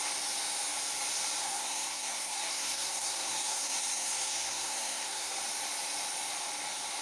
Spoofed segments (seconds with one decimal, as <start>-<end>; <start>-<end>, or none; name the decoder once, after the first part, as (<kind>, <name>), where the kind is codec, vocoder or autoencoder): 1.4-5.4 (codec, SNAC)